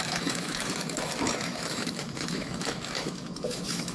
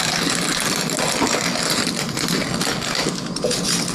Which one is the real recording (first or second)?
second